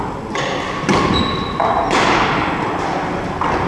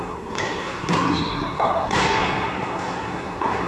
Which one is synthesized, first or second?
second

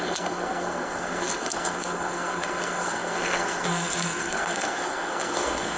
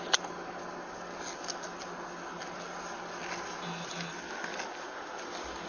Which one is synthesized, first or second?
first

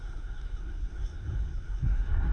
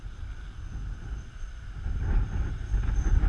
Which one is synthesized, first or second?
first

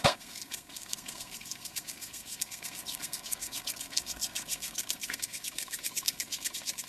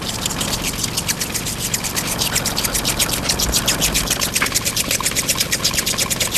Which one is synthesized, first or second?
first